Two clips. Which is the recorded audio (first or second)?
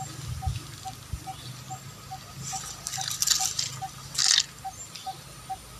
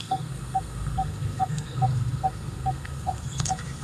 first